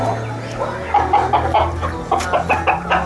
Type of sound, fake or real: real